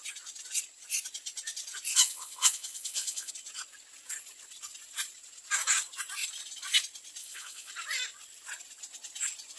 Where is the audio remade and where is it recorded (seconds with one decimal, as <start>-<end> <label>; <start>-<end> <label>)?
0.0-1.9 recorded; 1.9-3.3 remade; 3.3-7.2 recorded; 7.2-7.7 remade; 7.7-9.6 recorded